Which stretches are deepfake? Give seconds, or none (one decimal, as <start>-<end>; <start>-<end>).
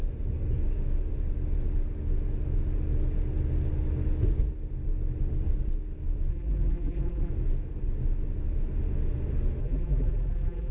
6.3-7.3; 9.6-10.7